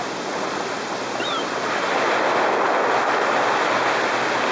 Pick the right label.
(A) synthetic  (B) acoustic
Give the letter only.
B